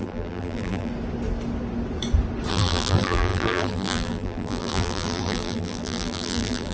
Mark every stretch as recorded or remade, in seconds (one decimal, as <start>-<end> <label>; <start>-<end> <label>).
0.0-0.9 remade; 0.9-2.5 recorded; 2.5-6.7 remade

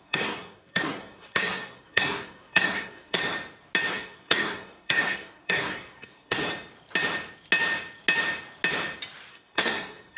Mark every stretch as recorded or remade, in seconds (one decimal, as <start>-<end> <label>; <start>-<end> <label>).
0.0-3.2 remade; 3.2-3.9 recorded; 3.9-6.4 remade; 6.4-9.3 recorded; 9.3-10.2 remade

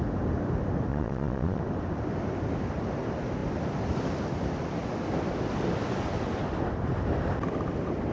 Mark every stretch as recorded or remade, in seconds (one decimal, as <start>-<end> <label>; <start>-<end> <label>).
0.0-0.9 recorded; 0.9-1.6 remade; 1.6-8.1 recorded